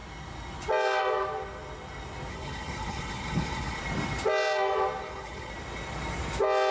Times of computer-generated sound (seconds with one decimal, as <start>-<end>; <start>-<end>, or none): 2.3-3.8; 5.0-5.5